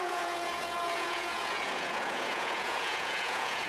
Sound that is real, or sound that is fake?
fake